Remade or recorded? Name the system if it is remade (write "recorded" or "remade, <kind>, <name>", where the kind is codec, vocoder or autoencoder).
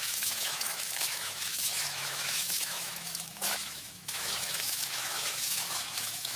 remade, autoencoder, DAC-VAE